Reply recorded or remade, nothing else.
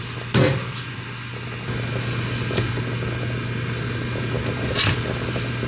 recorded